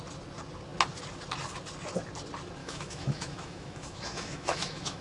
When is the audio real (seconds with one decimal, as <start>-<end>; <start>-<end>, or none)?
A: 0.0-2.6